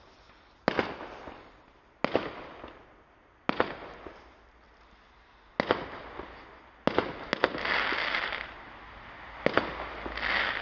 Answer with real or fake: real